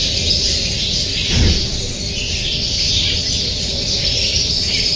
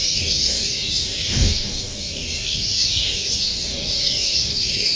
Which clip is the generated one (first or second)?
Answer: second